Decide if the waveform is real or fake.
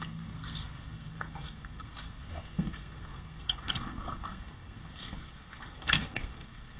fake